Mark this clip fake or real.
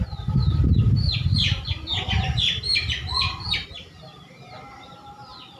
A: fake